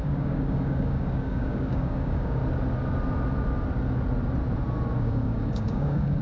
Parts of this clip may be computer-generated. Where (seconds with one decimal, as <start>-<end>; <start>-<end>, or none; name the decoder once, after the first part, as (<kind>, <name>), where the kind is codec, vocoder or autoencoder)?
0.0-2.4 (codec, DAC); 5.0-6.2

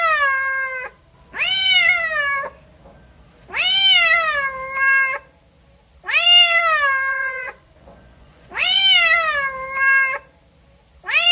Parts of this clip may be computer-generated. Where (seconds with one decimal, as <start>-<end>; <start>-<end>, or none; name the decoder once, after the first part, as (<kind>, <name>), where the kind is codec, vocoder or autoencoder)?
7.1-8.8 (vocoder, Vocos)

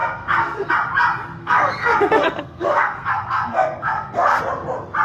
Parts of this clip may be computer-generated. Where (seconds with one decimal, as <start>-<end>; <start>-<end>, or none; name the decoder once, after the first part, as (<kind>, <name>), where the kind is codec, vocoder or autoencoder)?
0.0-0.7 (codec, SNAC); 1.4-4.4

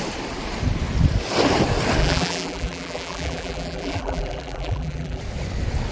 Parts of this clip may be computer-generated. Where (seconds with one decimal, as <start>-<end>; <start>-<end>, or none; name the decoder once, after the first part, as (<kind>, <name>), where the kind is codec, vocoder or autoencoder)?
2.0-5.2 (vocoder, BigVGAN v2)

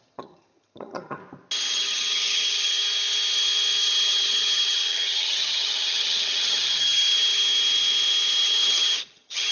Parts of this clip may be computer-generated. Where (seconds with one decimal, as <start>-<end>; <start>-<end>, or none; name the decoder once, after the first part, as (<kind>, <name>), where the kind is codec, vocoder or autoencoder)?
0.0-1.2 (vocoder, HiFi-GAN); 1.7-2.8; 3.8-7.4; 8.4-9.5